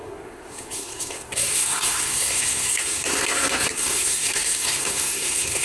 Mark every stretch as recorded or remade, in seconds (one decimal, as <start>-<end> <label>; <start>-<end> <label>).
0.0-5.6 remade